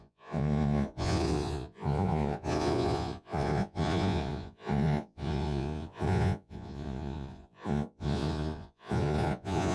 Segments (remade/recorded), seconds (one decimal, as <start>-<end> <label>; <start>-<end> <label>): 0.0-9.7 remade